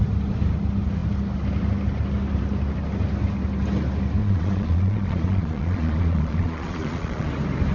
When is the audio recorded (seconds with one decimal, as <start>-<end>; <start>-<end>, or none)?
0.0-4.2; 7.3-7.7